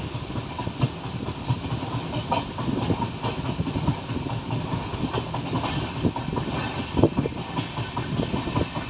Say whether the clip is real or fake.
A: real